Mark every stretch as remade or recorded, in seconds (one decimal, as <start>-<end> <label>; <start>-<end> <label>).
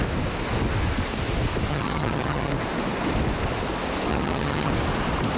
0.0-1.7 recorded; 1.7-2.5 remade; 2.5-4.1 recorded; 4.1-4.7 remade; 4.7-5.4 recorded